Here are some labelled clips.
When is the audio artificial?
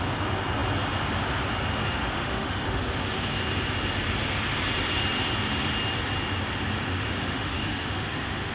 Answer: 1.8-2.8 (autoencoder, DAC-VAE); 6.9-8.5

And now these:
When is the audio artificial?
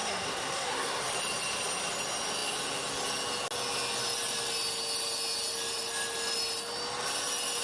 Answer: 0.0-1.0 (codec, SNAC)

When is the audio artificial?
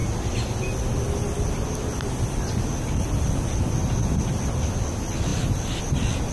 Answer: none